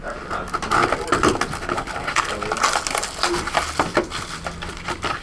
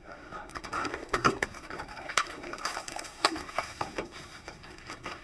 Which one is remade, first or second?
second